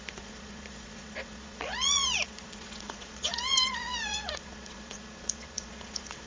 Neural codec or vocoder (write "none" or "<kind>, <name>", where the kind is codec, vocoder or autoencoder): vocoder, Vocos